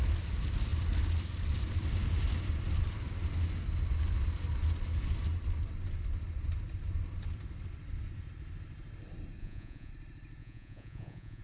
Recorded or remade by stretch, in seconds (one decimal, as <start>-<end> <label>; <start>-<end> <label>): 0.0-9.4 recorded; 9.4-9.9 remade; 9.9-10.4 recorded; 10.4-11.4 remade